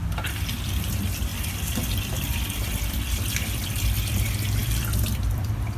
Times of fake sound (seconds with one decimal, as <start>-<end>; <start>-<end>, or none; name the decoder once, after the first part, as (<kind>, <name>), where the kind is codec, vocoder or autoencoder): 0.0-1.3 (vocoder, BigVGAN v2); 2.9-5.8